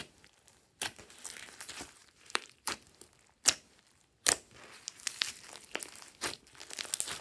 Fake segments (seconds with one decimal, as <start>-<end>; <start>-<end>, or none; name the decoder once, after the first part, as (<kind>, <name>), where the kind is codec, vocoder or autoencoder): 2.0-2.9 (vocoder, BigVGAN v2)